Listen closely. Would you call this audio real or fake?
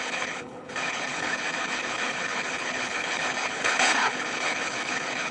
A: fake